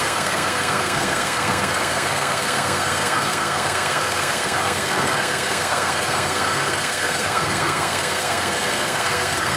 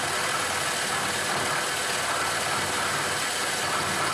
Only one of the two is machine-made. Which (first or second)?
first